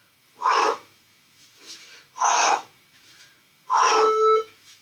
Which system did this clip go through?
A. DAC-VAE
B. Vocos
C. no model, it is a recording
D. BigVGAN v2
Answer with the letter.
A